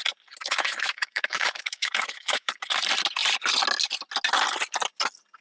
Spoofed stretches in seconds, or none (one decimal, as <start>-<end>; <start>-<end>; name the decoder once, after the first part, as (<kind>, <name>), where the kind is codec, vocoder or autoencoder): 0.4-2.5 (autoencoder, DAC-VAE)